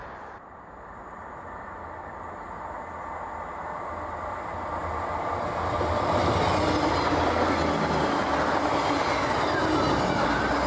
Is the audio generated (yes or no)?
no